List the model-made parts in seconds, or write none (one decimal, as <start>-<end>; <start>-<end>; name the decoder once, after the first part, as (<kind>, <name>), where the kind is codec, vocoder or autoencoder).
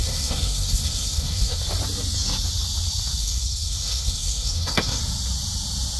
0.0-1.6 (codec, SNAC); 3.2-5.0